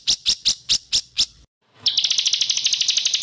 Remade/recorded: recorded